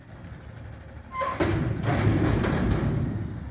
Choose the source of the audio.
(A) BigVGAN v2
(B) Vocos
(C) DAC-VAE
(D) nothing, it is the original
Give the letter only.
A